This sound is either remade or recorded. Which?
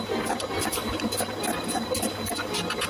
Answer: recorded